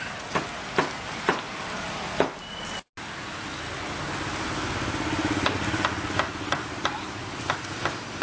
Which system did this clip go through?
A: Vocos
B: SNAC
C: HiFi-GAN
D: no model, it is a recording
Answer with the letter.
D